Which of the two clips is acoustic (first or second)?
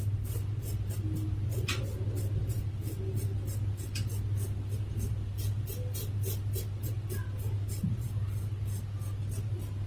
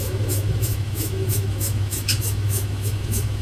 first